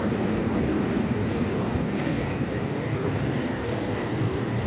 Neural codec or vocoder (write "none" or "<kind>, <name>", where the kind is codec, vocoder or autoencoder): codec, DAC